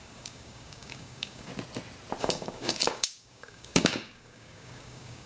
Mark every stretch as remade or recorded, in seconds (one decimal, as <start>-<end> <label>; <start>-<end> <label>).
0.0-1.5 remade; 1.5-2.2 recorded; 2.2-5.3 remade